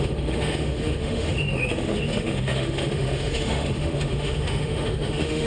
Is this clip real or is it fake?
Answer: fake